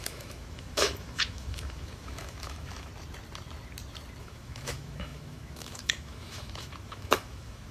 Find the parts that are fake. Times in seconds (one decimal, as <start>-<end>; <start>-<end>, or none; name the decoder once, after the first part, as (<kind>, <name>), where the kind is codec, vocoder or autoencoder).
0.0-2.9 (autoencoder, DAC-VAE); 4.2-7.7